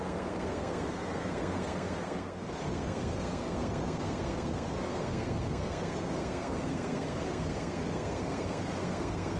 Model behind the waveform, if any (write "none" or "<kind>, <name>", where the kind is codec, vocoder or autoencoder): codec, SNAC